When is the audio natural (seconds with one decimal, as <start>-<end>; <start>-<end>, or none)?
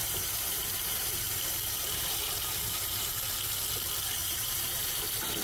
3.2-4.2; 5.0-5.4